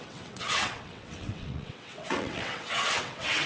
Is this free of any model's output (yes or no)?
no